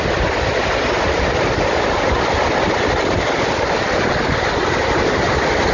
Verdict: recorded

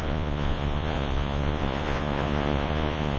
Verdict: remade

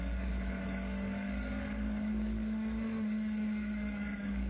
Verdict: remade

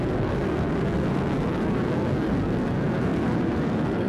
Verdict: remade